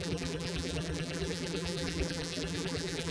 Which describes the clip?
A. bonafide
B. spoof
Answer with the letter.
B